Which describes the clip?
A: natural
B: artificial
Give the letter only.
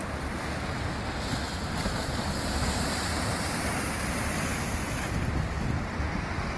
A